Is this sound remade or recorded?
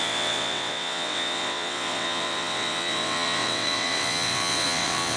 remade